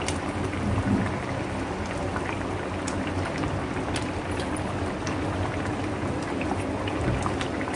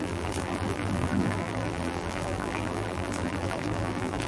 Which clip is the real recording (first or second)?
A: first